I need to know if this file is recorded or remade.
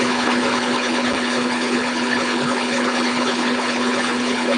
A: remade